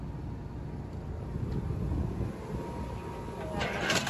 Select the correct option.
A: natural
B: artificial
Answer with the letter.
A